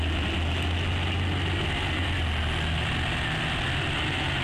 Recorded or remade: recorded